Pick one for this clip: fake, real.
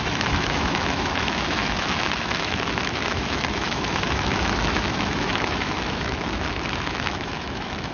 fake